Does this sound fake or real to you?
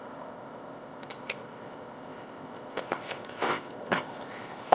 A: fake